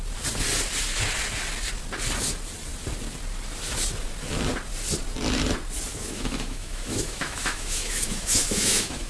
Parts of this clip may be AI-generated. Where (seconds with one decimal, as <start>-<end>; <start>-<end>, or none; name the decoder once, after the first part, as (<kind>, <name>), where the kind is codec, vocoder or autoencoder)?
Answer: 5.9-9.1 (autoencoder, DAC-VAE)